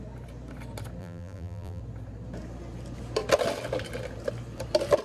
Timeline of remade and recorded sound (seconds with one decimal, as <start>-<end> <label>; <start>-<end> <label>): 0.0-1.0 recorded; 1.0-1.8 remade; 1.8-5.0 recorded